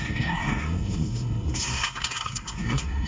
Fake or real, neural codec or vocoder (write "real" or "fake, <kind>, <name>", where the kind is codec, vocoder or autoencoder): fake, codec, SNAC